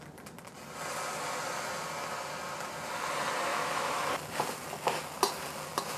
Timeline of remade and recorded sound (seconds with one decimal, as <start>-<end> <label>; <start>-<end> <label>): 0.0-3.5 recorded; 3.5-4.1 remade; 4.1-6.0 recorded